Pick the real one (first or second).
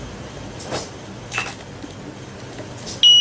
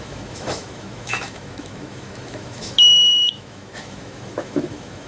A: first